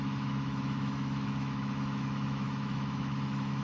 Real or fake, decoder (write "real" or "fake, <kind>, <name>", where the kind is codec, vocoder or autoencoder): fake, autoencoder, DAC-VAE